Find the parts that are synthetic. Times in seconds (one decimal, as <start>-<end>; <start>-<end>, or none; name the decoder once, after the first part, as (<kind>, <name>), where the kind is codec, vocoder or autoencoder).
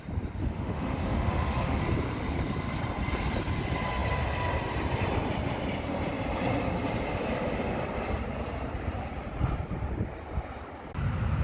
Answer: 0.4-1.8 (autoencoder, DAC-VAE)